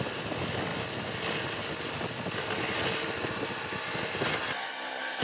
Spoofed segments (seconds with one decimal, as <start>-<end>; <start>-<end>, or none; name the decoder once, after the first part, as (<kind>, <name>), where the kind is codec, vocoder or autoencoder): none